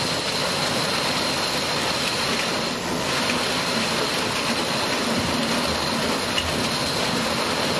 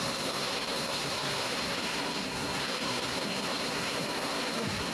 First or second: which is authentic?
first